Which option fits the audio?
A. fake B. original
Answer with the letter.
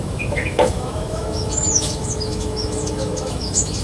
A